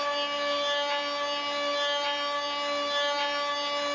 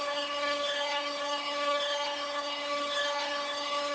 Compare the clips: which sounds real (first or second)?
first